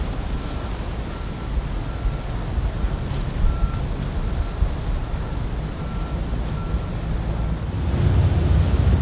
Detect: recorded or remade recorded